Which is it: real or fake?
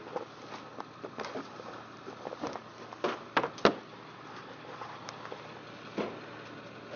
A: real